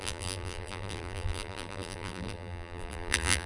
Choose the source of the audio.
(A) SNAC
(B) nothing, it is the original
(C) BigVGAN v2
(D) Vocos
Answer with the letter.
C